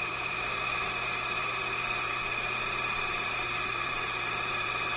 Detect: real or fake fake